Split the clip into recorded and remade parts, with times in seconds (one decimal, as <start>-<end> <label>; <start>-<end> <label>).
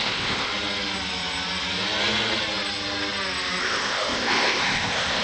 0.0-0.5 remade; 0.5-3.6 recorded; 3.6-5.2 remade